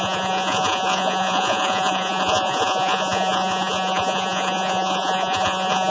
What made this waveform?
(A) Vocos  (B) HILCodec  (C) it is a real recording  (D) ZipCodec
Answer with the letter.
A